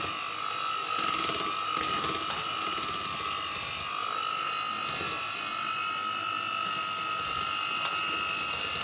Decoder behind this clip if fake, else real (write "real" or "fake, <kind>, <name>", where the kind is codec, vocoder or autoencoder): real